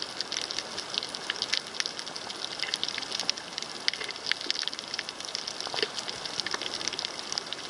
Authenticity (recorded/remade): recorded